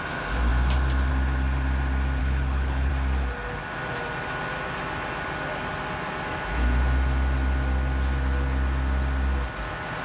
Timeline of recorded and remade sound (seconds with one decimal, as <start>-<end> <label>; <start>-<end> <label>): 0.0-2.2 recorded; 2.2-2.9 remade; 2.9-10.0 recorded